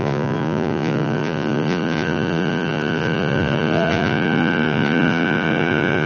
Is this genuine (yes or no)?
no